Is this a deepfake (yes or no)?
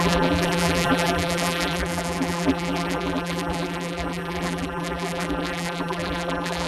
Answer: yes